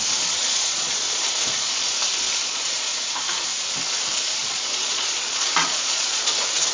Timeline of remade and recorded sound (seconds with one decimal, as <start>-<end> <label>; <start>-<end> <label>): 0.0-0.4 recorded; 0.4-1.7 remade; 1.7-2.4 recorded; 2.4-3.3 remade; 3.3-4.4 recorded; 4.4-6.7 remade